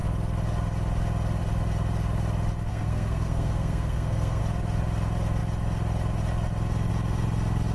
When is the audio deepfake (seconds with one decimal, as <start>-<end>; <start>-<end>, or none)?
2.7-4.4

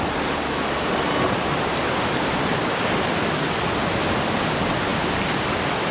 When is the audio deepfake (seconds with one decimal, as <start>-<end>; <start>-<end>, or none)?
none

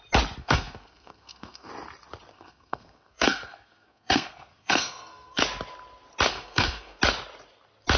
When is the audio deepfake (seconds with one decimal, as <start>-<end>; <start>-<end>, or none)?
0.4-1.7; 2.3-5.4; 6.3-7.0